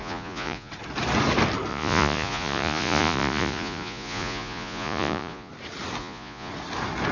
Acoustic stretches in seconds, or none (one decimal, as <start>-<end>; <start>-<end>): 0.7-1.7; 5.5-6.0; 6.5-7.1